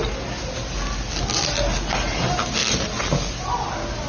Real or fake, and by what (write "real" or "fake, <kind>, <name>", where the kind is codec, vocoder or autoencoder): real